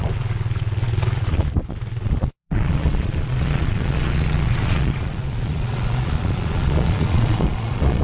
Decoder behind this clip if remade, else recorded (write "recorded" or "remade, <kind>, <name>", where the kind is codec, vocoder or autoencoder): remade, vocoder, Vocos